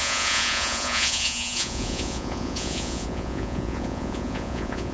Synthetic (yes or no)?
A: yes